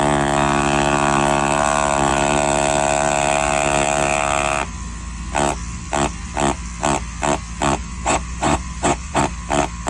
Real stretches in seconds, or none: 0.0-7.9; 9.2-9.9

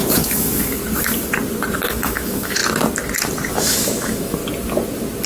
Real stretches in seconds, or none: 0.8-1.9; 2.6-3.5; 4.4-5.3

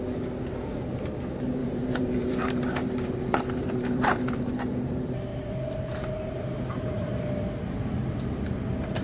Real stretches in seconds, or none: 0.0-1.6; 4.5-5.3; 7.3-9.0

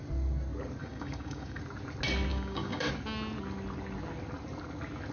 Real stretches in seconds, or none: 0.0-0.8; 1.6-2.3; 2.9-5.1

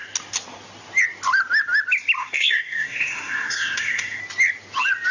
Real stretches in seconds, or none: 0.0-2.2; 4.2-5.1

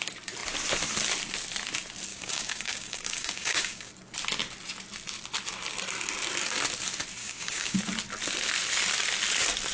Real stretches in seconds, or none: 0.0-2.1; 3.9-7.2; 7.8-9.7